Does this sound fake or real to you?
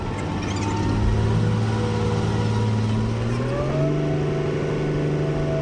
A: real